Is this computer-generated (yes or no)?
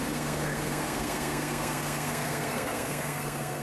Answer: yes